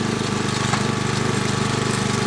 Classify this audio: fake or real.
real